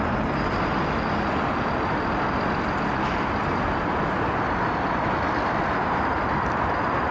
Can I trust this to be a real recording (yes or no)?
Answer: no